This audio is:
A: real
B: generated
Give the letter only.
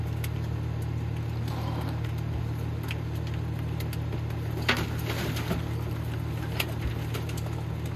A